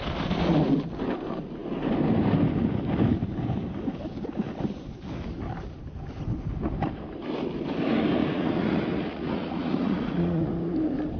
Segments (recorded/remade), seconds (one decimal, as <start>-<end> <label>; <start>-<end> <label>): 0.0-8.2 recorded; 8.2-10.5 remade; 10.5-11.2 recorded